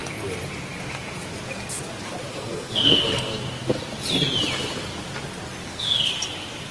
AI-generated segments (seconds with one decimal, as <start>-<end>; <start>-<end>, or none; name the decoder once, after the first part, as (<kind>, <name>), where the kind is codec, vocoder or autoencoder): 2.3-3.3 (codec, SNAC); 5.6-6.1